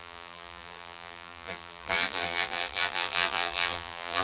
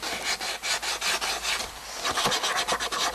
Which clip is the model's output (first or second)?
first